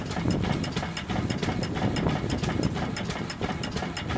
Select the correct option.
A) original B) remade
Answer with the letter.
A